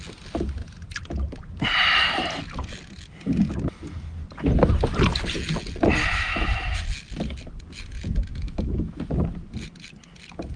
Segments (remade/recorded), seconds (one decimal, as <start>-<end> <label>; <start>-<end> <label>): 0.0-6.0 recorded; 6.0-6.8 remade; 6.8-8.3 recorded; 8.3-9.1 remade; 9.1-10.6 recorded